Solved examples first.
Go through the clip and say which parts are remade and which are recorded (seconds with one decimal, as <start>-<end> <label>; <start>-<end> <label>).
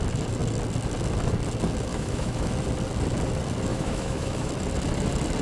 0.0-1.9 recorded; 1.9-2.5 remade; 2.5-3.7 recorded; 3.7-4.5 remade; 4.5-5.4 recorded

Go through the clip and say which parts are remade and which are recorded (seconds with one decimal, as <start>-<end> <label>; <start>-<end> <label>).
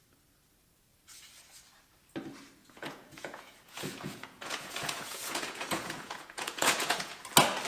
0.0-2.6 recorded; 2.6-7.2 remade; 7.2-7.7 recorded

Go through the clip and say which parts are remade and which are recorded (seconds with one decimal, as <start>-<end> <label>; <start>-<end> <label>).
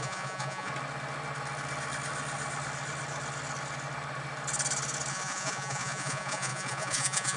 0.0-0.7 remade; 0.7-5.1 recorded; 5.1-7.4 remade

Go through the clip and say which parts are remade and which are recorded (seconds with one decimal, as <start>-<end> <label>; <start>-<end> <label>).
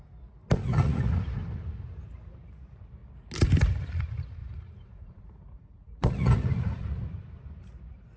0.0-0.6 recorded; 0.6-1.2 remade; 1.2-4.4 recorded; 4.4-7.1 remade; 7.1-8.2 recorded